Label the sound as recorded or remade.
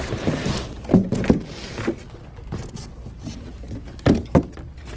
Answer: recorded